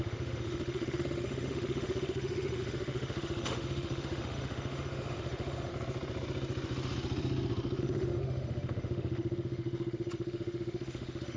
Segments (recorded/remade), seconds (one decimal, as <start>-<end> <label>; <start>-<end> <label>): 0.0-5.7 remade; 5.7-7.8 recorded; 7.8-11.4 remade